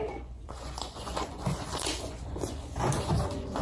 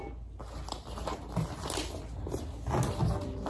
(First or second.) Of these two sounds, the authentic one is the second